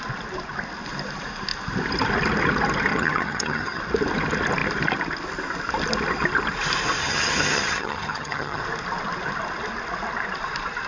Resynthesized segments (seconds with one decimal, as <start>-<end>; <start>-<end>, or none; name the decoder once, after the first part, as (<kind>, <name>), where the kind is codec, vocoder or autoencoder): 2.9-3.8 (vocoder, HiFi-GAN); 7.0-8.6